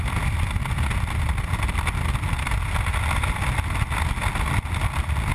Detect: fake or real real